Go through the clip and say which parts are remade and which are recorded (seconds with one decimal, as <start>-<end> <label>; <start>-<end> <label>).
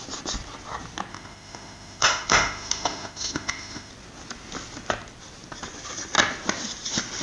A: 0.0-1.1 recorded; 1.1-3.9 remade; 3.9-7.2 recorded